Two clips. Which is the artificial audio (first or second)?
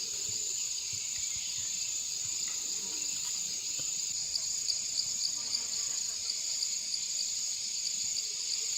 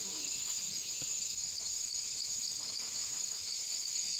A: second